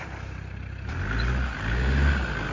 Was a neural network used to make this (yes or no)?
no